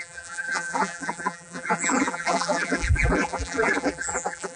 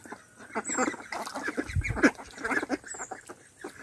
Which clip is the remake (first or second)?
first